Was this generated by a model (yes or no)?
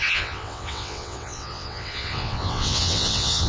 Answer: yes